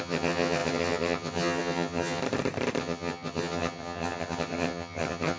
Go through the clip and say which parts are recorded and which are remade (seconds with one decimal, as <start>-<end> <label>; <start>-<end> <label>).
0.0-2.2 remade; 2.2-2.8 recorded; 2.8-5.4 remade